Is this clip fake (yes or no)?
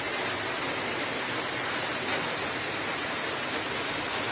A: no